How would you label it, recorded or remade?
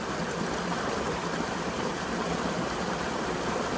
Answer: recorded